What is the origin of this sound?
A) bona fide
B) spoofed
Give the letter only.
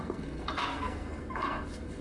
B